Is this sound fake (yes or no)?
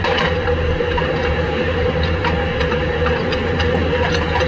yes